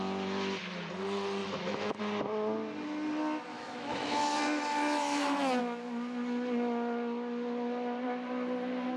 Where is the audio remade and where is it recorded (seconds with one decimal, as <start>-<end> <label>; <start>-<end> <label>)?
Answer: 0.0-1.4 recorded; 1.4-2.0 remade; 2.0-3.5 recorded; 3.5-5.6 remade; 5.6-9.0 recorded